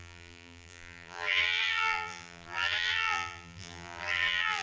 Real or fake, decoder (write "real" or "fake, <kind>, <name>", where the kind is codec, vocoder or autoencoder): fake, vocoder, BigVGAN v2